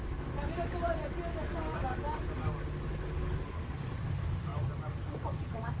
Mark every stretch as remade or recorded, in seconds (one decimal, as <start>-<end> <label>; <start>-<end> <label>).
0.0-5.8 recorded